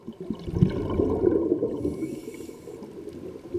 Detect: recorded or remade recorded